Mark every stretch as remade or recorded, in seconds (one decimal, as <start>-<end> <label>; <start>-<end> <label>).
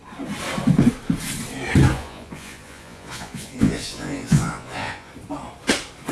0.0-1.9 recorded; 1.9-5.1 remade; 5.1-6.1 recorded